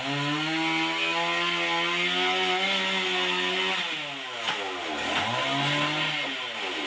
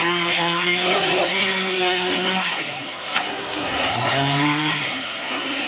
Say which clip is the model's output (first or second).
second